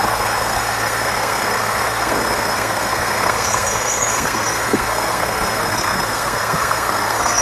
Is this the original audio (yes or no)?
no